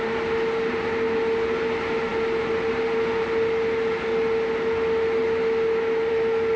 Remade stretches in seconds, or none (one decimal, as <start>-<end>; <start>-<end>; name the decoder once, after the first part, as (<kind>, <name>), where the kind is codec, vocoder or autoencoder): none